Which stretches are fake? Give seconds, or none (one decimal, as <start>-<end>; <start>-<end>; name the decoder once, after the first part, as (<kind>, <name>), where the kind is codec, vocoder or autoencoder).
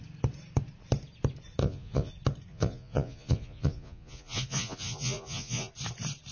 1.6-2.1 (vocoder, Vocos); 2.5-5.7